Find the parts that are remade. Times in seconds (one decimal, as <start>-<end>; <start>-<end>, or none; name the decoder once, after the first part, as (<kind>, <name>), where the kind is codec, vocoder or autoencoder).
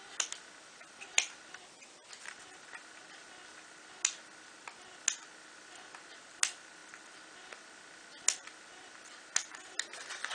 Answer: none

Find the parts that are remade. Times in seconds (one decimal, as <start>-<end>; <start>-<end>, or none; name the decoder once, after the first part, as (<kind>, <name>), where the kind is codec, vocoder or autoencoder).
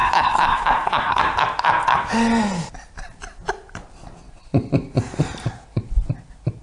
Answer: 0.0-1.2 (codec, SNAC)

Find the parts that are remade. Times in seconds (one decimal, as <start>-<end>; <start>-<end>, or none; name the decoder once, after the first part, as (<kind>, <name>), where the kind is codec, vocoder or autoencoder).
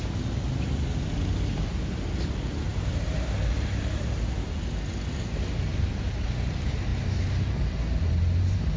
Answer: 2.7-4.1 (vocoder, BigVGAN v2); 5.7-6.4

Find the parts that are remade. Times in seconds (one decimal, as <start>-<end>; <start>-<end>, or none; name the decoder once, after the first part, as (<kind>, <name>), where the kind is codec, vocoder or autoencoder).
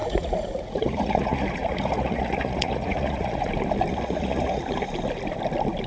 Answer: 0.0-3.5 (vocoder, Vocos); 3.9-4.6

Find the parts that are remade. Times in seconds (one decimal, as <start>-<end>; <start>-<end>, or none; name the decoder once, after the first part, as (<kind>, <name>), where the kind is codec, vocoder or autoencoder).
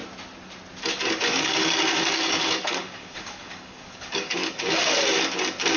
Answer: 1.3-4.8 (codec, DAC)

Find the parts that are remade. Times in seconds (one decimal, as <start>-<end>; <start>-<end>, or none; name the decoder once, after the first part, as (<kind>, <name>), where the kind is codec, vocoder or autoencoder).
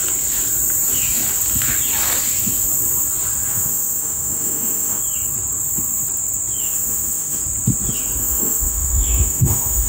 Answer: 3.5-5.0 (autoencoder, DAC-VAE); 6.6-7.4; 8.2-9.9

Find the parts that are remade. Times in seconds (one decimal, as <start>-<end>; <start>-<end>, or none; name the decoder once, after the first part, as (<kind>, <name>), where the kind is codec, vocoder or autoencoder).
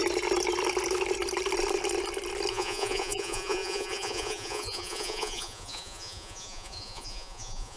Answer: 2.5-7.8 (vocoder, Vocos)